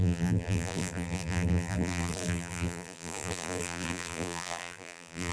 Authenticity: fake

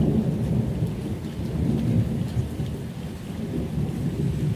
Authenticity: real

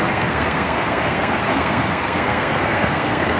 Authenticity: fake